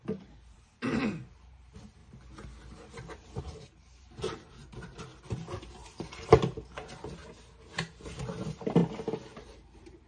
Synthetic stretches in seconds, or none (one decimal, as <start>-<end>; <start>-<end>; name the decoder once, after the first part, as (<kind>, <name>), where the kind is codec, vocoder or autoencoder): 0.0-2.0 (vocoder, BigVGAN v2); 3.4-5.1; 5.7-7.2; 7.9-8.8; 9.4-10.1